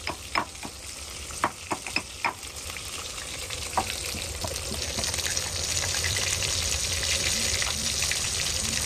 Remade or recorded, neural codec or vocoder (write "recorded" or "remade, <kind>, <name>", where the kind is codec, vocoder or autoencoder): recorded